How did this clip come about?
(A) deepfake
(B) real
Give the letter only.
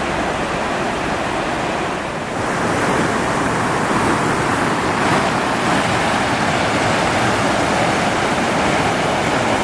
B